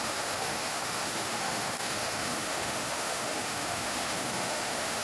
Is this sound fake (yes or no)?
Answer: yes